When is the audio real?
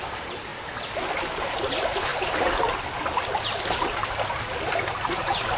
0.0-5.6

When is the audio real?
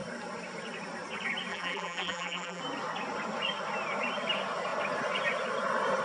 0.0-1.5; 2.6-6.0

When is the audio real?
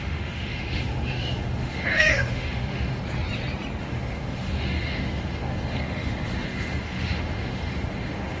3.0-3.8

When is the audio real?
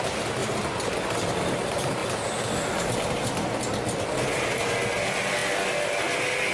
0.0-6.5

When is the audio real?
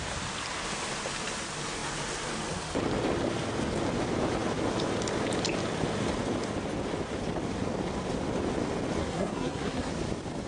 0.0-9.0; 9.9-10.5